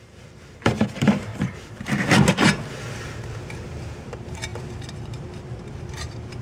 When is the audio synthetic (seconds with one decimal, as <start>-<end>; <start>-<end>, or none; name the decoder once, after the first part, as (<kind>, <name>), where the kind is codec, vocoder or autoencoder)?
0.0-1.3 (vocoder, BigVGAN v2); 4.0-4.5; 5.4-6.4